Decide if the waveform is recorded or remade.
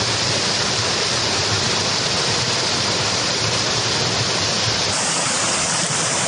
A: remade